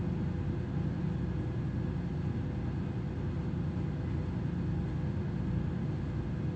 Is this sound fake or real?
real